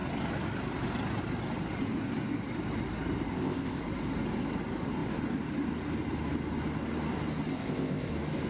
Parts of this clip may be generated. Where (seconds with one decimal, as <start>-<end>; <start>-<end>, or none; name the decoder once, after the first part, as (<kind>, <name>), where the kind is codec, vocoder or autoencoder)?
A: 3.3-3.8 (codec, ZipCodec); 7.5-8.1